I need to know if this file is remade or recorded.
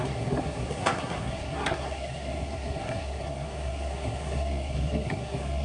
remade